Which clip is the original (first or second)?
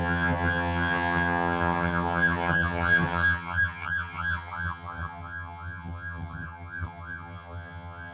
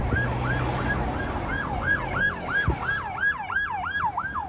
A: second